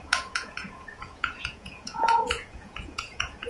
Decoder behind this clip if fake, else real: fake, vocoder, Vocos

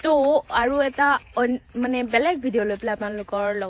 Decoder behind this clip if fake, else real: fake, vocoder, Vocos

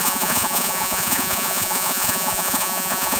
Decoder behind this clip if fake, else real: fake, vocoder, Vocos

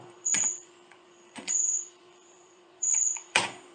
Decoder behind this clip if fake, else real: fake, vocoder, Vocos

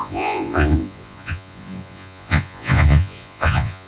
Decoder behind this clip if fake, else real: fake, vocoder, Vocos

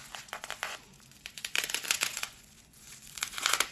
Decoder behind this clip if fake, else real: fake, vocoder, Vocos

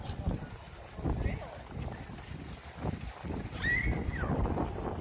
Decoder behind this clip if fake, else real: real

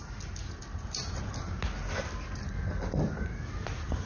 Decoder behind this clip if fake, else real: real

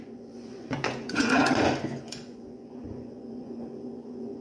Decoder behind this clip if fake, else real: fake, vocoder, Vocos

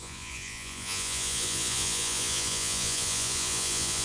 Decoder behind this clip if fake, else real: fake, vocoder, Vocos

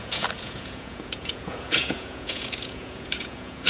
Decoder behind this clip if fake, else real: fake, vocoder, Vocos